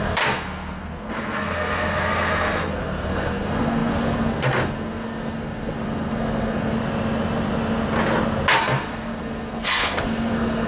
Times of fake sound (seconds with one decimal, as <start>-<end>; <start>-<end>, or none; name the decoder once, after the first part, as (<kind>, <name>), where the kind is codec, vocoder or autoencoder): 0.0-6.8 (codec, SNAC); 8.6-10.7